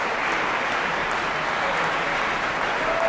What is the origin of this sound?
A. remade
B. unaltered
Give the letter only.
B